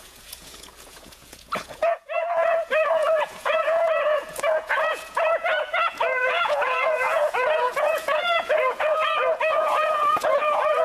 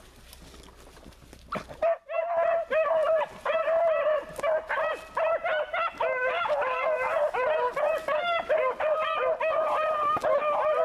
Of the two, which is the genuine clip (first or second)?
second